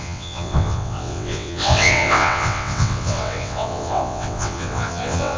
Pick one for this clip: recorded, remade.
remade